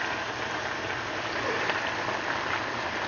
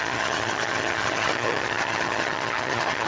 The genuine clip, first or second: first